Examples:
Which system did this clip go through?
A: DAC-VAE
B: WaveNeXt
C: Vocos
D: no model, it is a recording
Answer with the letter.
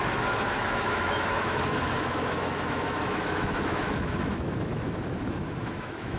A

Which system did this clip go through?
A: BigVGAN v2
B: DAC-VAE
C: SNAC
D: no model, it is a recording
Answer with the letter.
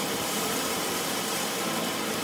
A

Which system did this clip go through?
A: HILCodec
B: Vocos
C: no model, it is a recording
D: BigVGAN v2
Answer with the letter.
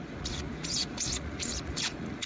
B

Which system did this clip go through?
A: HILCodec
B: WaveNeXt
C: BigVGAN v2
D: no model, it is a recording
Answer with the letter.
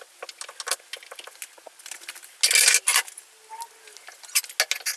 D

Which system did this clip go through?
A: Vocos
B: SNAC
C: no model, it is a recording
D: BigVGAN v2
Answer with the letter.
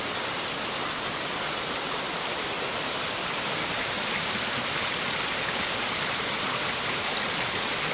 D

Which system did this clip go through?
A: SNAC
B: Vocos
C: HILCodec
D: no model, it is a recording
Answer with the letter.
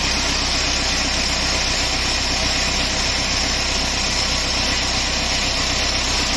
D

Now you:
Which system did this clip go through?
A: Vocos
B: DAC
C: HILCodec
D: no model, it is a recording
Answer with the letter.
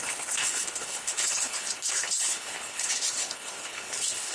C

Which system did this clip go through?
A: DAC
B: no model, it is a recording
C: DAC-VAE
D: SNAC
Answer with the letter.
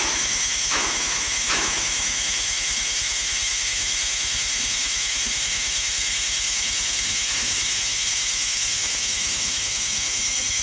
C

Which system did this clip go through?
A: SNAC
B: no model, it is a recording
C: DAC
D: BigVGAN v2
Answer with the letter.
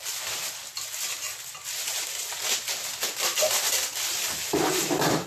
B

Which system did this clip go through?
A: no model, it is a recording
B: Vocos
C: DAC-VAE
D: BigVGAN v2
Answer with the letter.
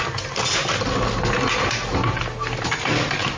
A